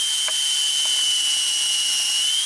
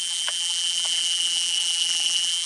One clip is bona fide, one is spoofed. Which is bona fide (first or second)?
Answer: first